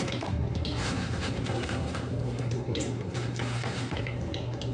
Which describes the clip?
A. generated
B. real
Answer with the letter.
A